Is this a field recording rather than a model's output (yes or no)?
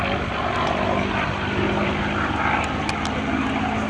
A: yes